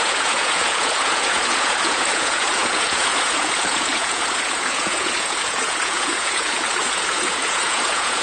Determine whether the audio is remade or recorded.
remade